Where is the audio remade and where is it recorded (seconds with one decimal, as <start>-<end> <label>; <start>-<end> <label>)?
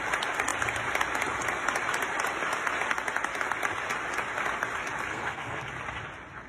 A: 0.0-5.1 recorded; 5.1-5.7 remade; 5.7-6.5 recorded